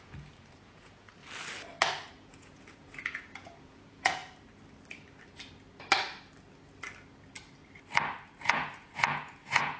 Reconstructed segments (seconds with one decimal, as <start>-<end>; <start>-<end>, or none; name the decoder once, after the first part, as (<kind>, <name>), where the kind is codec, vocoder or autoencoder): 0.0-1.2 (vocoder, Vocos); 2.1-4.2; 8.4-9.8